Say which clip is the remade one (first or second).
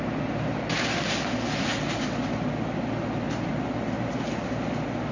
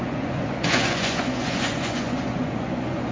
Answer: second